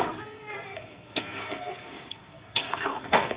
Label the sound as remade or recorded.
remade